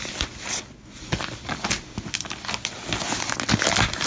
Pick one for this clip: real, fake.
real